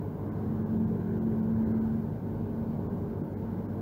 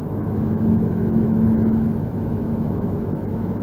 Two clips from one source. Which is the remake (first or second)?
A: second